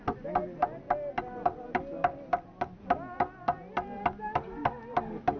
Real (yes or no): yes